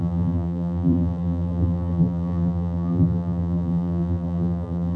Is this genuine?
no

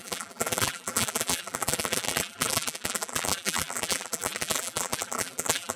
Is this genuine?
no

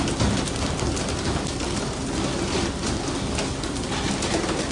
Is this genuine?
yes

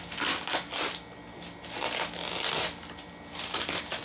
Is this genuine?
yes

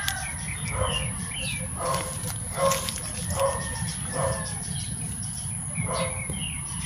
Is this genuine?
yes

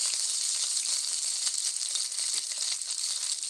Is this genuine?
yes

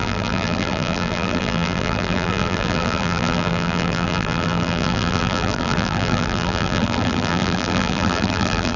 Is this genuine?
no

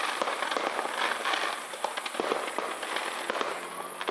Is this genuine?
yes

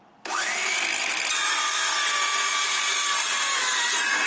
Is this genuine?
yes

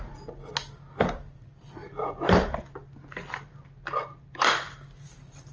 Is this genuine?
yes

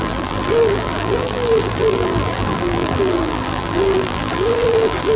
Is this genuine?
no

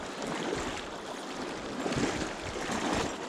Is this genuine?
no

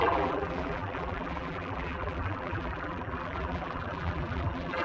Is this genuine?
no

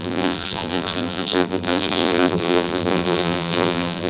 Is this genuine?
no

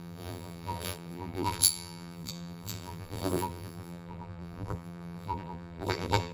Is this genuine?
no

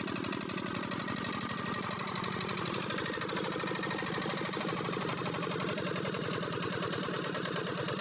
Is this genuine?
no